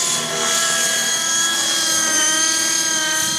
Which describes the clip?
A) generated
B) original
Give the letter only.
B